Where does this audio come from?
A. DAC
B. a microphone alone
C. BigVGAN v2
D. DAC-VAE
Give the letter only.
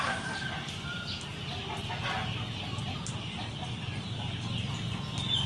B